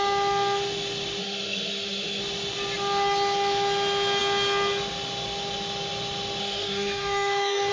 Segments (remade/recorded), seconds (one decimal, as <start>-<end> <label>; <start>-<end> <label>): 0.0-1.2 recorded; 1.2-2.2 remade; 2.2-6.4 recorded; 6.4-7.7 remade